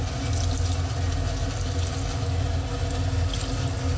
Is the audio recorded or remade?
recorded